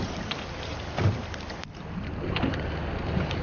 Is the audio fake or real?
real